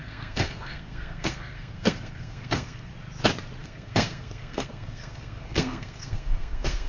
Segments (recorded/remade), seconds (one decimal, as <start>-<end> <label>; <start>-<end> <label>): 0.0-2.9 remade; 2.9-3.6 recorded; 3.6-6.9 remade